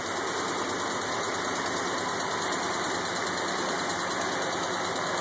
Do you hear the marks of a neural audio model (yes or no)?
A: no